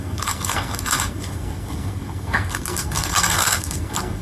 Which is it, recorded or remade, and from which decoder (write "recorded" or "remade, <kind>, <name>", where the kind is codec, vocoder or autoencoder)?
remade, codec, SNAC